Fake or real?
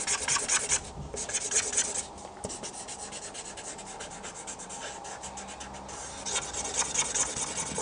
real